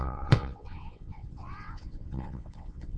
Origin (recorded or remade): remade